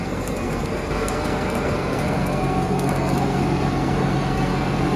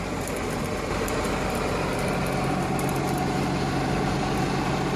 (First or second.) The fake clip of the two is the first